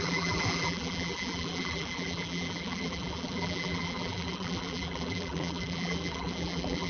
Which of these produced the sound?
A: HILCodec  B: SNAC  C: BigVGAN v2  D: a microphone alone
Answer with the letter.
C